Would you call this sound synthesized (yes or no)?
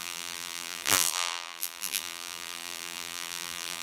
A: yes